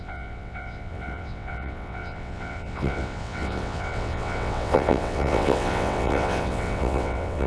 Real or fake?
fake